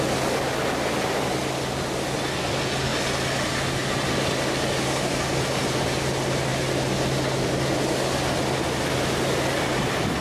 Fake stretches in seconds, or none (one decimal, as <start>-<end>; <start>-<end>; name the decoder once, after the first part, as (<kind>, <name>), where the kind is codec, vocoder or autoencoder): none